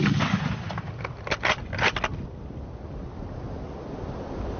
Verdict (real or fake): real